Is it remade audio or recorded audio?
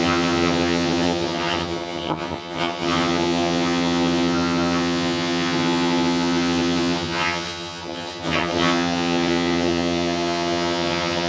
remade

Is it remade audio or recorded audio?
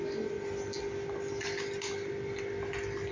recorded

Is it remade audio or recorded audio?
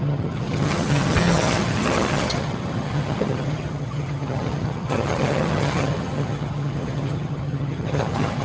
remade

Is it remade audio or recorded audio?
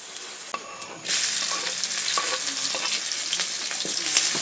recorded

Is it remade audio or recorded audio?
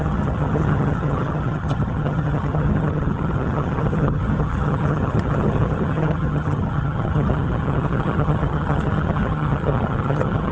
remade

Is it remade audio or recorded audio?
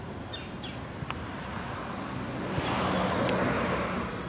recorded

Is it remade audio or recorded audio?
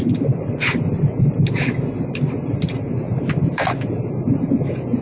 recorded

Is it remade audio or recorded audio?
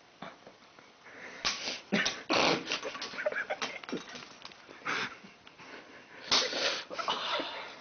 recorded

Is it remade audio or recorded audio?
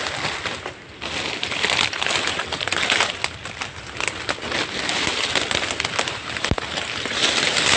recorded